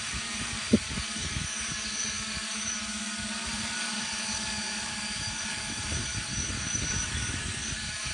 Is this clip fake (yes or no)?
yes